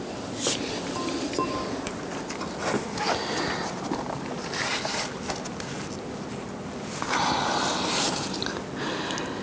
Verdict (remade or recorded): recorded